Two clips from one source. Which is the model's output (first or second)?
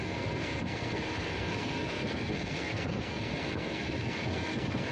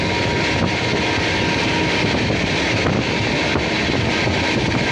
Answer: first